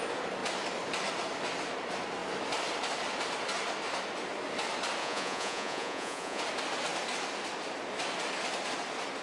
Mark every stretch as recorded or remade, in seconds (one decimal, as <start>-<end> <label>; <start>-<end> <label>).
0.0-5.0 recorded; 5.0-6.4 remade; 6.4-9.2 recorded